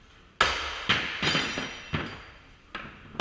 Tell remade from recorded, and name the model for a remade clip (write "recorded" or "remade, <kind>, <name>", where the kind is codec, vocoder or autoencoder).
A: recorded